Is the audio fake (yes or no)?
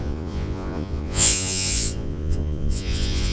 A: yes